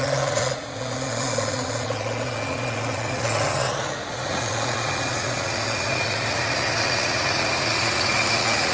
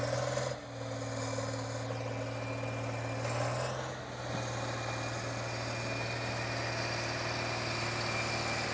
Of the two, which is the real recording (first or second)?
second